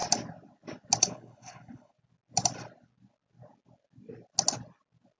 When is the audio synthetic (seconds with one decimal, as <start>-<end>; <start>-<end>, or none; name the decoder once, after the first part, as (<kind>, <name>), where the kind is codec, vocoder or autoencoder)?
1.0-1.9 (codec, HILCodec)